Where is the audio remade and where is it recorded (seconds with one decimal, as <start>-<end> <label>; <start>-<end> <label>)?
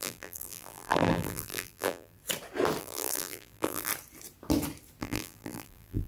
0.0-2.2 remade; 2.2-2.8 recorded; 2.8-3.9 remade; 3.9-5.0 recorded; 5.0-6.1 remade